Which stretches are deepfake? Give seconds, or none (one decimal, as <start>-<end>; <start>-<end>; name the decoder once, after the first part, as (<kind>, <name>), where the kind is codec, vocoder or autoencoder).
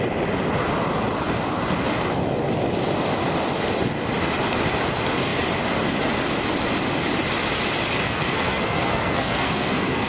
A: 8.0-10.1 (codec, SNAC)